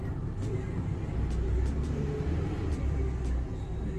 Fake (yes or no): no